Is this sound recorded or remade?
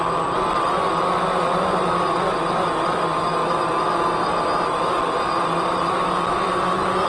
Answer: recorded